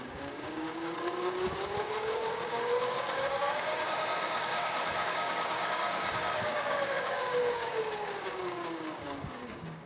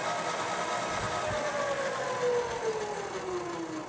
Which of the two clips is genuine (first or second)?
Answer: second